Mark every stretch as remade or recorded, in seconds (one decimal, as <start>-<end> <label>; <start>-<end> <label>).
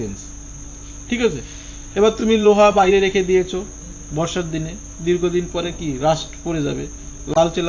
0.0-2.2 recorded; 2.2-2.9 remade; 2.9-7.7 recorded